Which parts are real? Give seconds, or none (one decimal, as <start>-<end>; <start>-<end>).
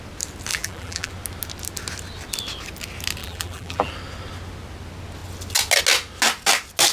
0.0-0.5; 1.1-3.2; 3.9-6.9